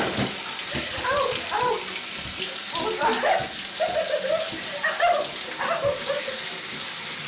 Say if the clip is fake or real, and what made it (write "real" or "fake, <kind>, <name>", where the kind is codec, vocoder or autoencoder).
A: real